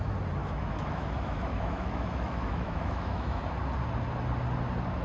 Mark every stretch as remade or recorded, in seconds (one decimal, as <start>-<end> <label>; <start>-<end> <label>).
0.0-0.4 recorded; 0.4-3.4 remade; 3.4-5.0 recorded